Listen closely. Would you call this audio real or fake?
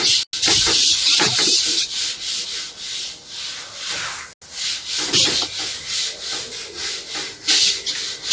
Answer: real